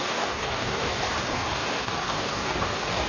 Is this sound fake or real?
fake